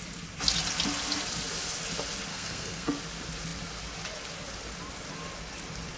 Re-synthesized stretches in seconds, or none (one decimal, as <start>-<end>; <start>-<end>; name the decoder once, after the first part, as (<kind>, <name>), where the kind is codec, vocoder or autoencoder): 2.3-2.9 (codec, SNAC)